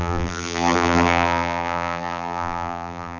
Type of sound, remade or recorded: remade